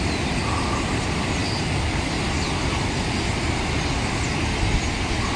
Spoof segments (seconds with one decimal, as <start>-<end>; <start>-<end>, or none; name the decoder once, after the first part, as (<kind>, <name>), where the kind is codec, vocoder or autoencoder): none